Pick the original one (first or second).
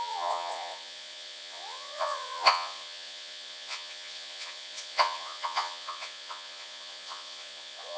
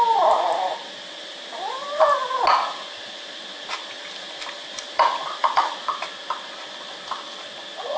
second